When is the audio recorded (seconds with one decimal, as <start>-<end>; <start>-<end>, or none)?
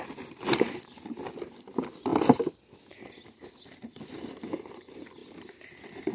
0.0-5.2